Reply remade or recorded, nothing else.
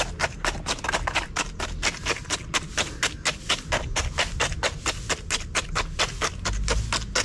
recorded